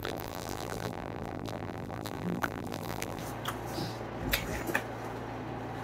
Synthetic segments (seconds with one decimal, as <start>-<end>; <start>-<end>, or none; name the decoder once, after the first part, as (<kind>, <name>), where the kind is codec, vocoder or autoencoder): 0.0-3.2 (vocoder, BigVGAN v2)